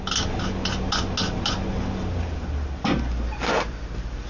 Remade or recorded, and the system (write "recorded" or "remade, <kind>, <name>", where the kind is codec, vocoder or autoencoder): recorded